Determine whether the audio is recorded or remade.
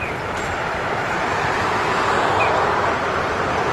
remade